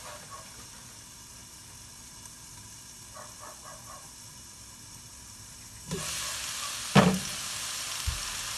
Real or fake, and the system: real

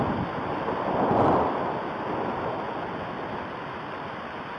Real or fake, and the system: real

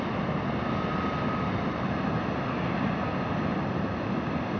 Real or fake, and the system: real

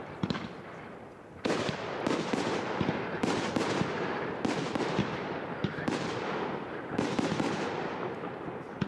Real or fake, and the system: fake, vocoder, BigVGAN v2